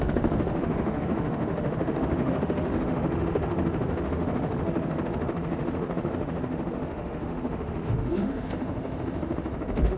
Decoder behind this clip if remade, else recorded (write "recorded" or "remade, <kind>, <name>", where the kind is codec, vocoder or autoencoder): remade, autoencoder, DAC-VAE